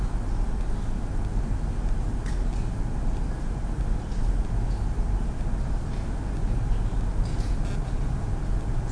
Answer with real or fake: real